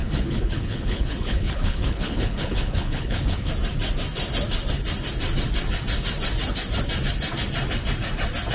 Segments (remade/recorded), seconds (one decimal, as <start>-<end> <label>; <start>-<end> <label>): 0.0-3.5 remade; 3.5-8.5 recorded